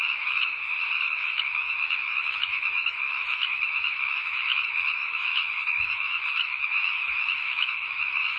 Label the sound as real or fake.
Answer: fake